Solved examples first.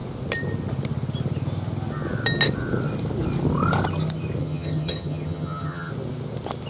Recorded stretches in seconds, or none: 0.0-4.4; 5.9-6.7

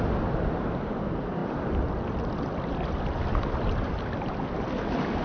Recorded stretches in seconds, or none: 0.0-5.2

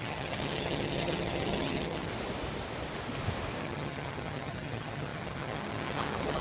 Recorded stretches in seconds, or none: 2.1-3.6

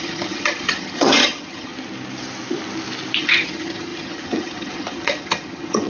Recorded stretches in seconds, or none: 1.7-3.2

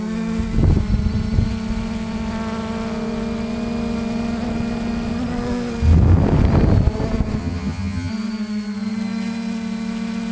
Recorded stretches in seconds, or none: 0.0-7.4; 8.1-10.3

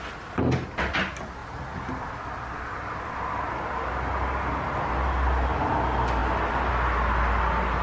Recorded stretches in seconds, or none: 0.0-7.8

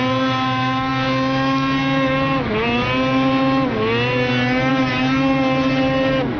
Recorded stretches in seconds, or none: 0.0-6.4

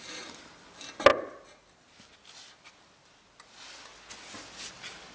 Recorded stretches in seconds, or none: 0.0-5.1